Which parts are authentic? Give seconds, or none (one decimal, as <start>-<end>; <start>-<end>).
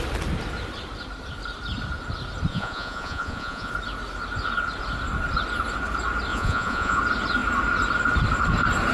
0.0-2.5; 3.7-6.3; 7.0-8.9